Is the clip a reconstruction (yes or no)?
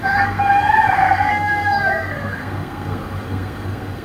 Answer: yes